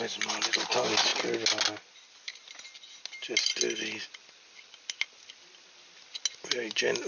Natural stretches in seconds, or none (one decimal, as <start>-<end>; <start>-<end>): 0.0-7.1